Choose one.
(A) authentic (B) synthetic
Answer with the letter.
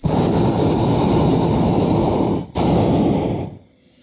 A